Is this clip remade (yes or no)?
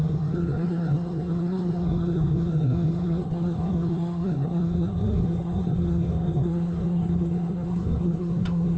yes